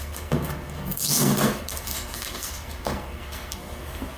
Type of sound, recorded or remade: remade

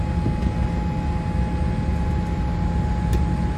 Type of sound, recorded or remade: recorded